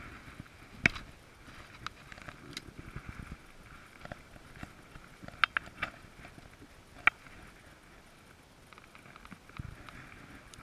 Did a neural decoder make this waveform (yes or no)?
no